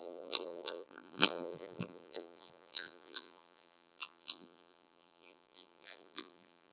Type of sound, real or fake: fake